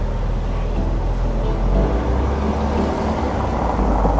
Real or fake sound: real